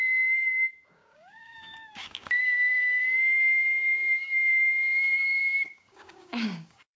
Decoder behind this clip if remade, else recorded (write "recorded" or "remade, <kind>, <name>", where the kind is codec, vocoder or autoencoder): remade, codec, DAC